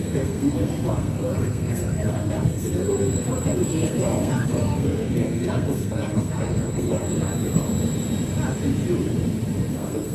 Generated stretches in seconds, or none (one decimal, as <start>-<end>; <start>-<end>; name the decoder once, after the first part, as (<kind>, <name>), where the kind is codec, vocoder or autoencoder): 0.0-7.3 (codec, SNAC); 9.7-10.1